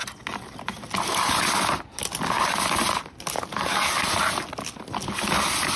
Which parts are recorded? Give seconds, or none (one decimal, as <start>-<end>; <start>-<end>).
0.0-5.8